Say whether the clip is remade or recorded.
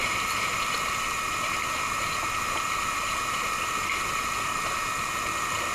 recorded